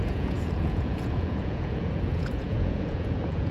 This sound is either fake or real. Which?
fake